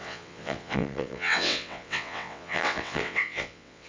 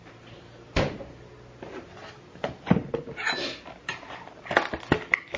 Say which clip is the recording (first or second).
second